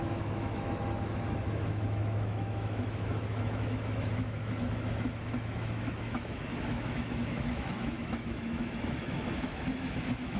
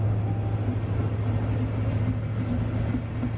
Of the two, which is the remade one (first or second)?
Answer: first